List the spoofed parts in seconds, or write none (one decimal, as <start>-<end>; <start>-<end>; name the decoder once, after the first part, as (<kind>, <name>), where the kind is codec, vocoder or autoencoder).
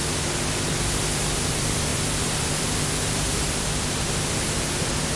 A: none